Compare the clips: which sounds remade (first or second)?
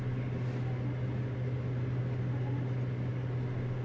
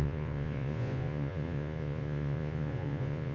second